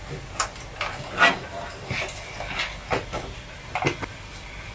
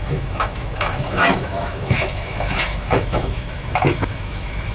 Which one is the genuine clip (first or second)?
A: first